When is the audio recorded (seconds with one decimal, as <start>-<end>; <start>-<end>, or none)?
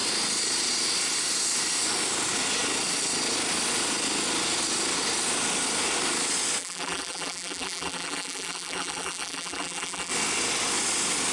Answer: 0.0-6.6; 10.1-11.3